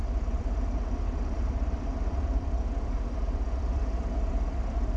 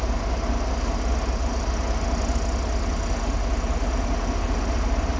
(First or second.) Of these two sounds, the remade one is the first